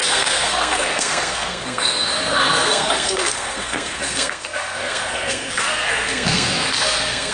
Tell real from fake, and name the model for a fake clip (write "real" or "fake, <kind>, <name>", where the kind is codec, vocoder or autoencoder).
fake, codec, SNAC